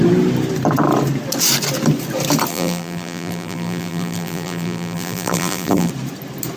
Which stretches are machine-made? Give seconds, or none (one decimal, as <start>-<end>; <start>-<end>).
2.5-5.9